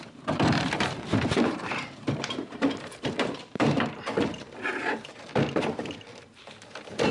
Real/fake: fake